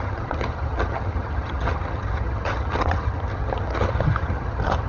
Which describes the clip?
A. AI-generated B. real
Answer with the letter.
A